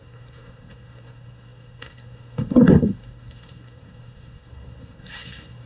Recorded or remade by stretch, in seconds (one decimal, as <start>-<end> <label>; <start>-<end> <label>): 0.0-5.7 remade